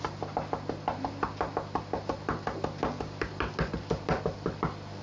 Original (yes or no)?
yes